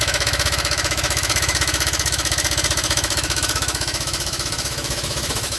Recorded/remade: remade